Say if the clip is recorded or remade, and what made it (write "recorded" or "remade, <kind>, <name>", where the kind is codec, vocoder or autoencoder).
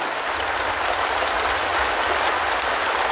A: recorded